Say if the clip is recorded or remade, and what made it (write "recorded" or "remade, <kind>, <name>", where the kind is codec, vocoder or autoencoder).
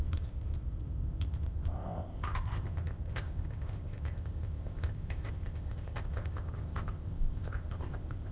remade, codec, ZipCodec